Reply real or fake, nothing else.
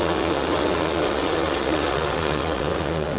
fake